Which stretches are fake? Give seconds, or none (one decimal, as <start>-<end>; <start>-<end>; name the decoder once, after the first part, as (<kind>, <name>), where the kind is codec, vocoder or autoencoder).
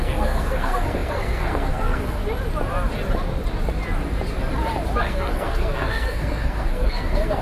0.0-2.2 (codec, SNAC); 5.0-7.4